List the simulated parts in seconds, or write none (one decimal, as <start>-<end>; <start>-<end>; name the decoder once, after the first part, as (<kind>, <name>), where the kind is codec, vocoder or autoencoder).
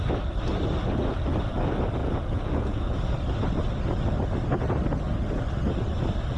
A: 2.0-3.1 (vocoder, Vocos)